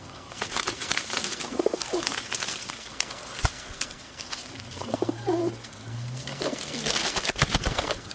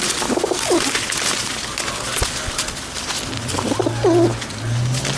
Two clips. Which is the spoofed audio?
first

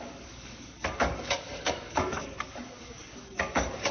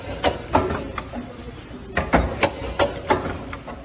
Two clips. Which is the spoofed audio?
first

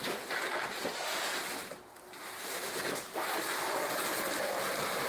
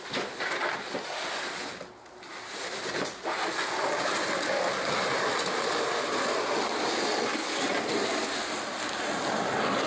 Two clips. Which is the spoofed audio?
first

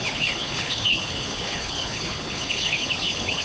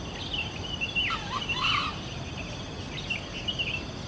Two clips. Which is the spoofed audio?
first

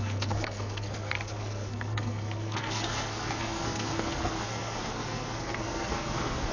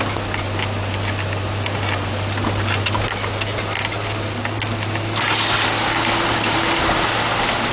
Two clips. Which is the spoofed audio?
first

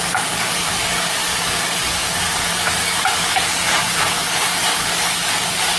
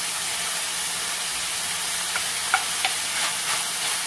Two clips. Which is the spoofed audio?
first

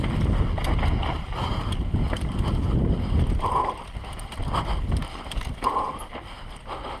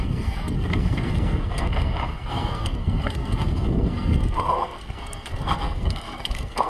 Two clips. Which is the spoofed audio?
second